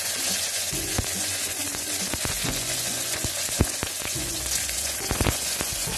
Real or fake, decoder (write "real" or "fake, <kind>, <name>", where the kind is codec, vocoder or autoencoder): fake, vocoder, Vocos